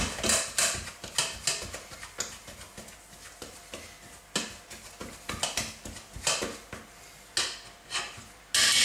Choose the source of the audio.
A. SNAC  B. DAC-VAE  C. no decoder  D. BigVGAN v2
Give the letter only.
C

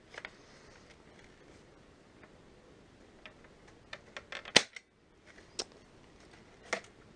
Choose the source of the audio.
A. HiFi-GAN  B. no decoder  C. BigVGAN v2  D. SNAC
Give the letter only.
B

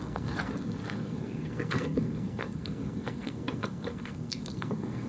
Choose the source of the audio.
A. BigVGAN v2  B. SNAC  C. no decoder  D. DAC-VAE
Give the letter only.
B